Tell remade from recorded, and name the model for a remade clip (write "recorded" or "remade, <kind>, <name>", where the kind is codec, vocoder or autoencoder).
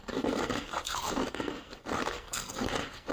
remade, codec, SNAC